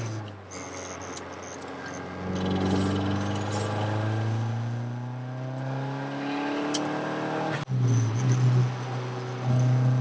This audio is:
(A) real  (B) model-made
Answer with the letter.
A